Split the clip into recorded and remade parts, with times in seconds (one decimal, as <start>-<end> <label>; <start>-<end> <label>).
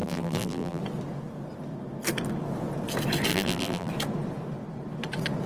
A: 0.0-0.8 remade; 0.8-3.3 recorded; 3.3-3.9 remade; 3.9-5.5 recorded